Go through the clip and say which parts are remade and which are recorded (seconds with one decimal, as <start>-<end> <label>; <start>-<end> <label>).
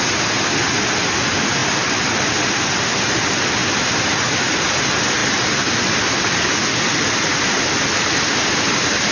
0.0-9.1 recorded